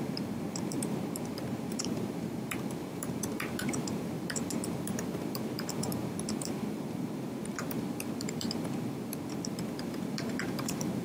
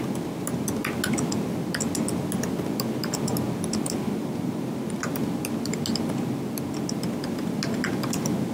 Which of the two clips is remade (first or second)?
first